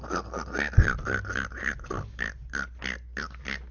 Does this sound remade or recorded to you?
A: recorded